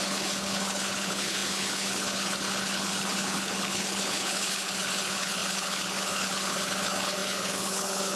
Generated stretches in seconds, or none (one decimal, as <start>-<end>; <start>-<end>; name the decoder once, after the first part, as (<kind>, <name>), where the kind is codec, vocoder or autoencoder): 0.0-8.2 (codec, HILCodec)